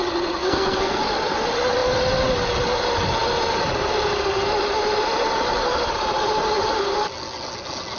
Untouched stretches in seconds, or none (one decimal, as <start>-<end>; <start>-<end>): 0.0-0.4; 1.0-8.0